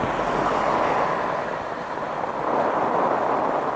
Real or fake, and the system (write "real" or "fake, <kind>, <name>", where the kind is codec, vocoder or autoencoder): real